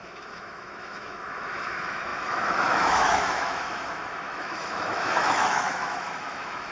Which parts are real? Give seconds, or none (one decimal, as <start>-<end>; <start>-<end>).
none